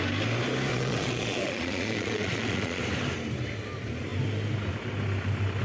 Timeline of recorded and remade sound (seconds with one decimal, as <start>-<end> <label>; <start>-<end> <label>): 0.0-0.7 recorded; 0.7-2.8 remade; 2.8-5.6 recorded